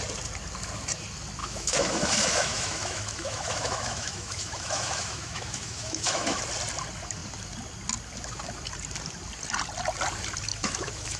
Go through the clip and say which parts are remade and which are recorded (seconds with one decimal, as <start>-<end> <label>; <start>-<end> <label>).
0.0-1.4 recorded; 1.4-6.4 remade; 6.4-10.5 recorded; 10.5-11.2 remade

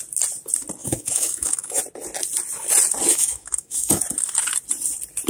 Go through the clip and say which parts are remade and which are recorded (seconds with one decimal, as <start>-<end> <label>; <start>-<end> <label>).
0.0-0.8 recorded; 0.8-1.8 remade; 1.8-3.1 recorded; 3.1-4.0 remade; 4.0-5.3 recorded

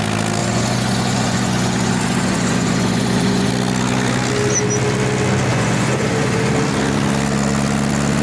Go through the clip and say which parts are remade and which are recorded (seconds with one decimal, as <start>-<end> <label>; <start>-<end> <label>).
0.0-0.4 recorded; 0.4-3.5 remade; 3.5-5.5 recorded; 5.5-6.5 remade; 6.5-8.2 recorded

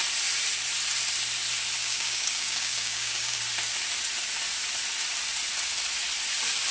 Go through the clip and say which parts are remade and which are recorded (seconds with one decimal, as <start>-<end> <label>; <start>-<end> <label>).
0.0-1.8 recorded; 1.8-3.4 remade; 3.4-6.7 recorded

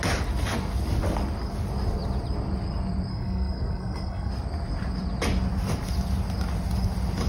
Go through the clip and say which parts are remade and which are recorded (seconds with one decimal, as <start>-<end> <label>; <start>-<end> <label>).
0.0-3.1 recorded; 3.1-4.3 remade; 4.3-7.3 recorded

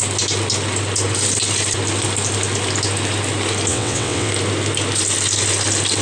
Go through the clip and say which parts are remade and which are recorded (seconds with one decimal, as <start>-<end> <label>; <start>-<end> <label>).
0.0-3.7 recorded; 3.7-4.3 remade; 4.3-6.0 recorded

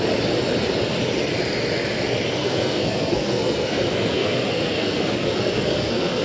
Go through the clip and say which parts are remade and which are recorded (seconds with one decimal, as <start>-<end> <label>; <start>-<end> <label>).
0.0-2.4 recorded; 2.4-6.2 remade